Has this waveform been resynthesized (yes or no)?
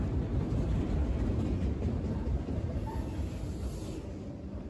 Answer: no